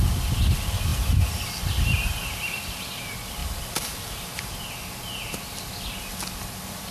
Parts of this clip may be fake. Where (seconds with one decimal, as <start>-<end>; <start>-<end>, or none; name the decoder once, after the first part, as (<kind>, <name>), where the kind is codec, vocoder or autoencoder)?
0.9-2.8 (vocoder, BigVGAN v2); 3.4-4.5